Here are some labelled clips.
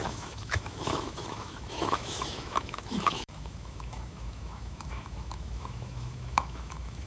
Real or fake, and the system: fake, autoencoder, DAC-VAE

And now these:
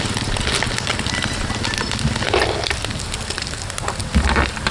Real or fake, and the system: real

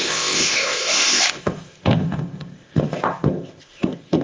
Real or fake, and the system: fake, codec, ZipCodec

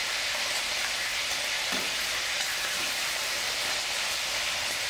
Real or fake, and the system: fake, vocoder, BigVGAN v2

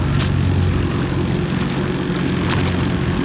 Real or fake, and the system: real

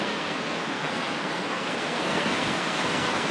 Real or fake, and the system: fake, codec, SNAC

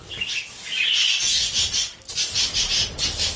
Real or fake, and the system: real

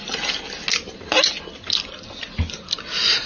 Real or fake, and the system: real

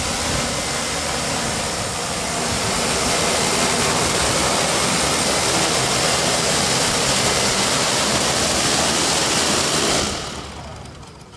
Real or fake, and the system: real